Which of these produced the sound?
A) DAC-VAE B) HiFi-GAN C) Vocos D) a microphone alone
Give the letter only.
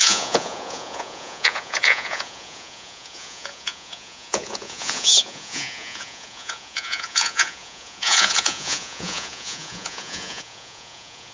C